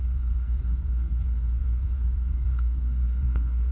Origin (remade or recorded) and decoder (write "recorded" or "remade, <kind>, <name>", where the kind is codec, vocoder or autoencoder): remade, codec, SNAC